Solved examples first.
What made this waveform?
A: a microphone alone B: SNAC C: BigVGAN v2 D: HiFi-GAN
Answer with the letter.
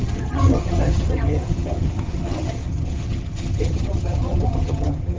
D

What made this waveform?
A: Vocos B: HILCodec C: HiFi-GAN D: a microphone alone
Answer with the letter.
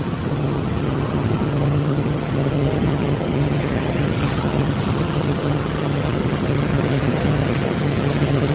C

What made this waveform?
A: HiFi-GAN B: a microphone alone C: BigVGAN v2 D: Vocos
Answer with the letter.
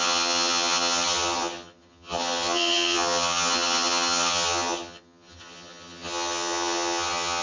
A